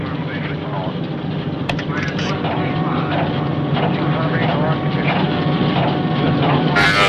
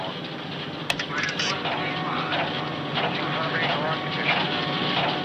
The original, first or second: second